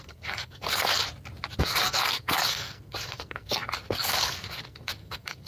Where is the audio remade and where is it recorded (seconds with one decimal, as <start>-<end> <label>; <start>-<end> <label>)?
0.0-1.0 remade; 1.0-1.6 recorded; 1.6-5.5 remade